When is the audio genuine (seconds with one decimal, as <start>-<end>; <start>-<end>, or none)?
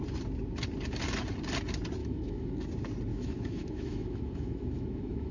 0.0-2.0; 2.7-3.1